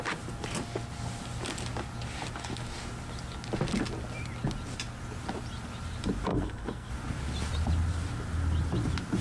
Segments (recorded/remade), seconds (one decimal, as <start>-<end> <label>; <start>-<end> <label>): 0.0-6.3 recorded; 6.3-6.9 remade; 6.9-9.2 recorded